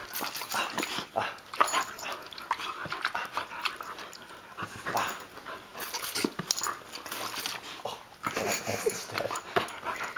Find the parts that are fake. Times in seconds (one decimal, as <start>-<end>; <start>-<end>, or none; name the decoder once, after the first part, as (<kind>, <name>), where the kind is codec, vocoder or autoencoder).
none